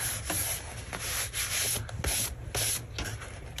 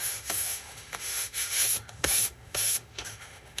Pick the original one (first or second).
first